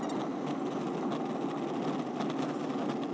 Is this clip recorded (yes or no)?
yes